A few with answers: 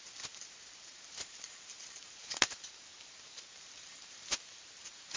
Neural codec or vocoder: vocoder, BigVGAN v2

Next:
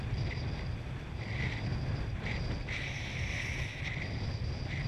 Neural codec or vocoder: none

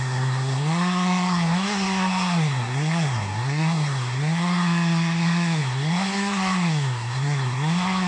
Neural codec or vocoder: codec, SNAC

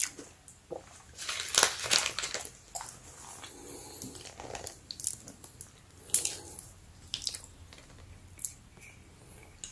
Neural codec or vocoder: none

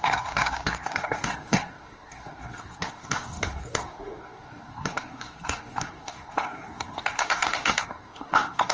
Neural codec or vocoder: codec, SNAC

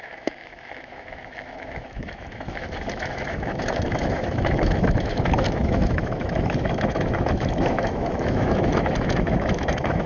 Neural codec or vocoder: autoencoder, DAC-VAE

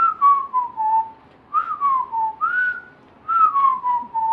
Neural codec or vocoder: none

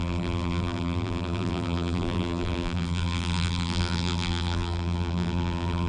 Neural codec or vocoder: vocoder, BigVGAN v2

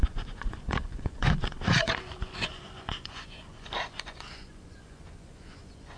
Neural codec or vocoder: vocoder, Vocos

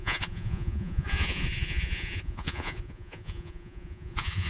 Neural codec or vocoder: vocoder, Vocos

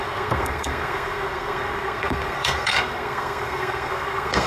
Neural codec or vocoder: codec, SNAC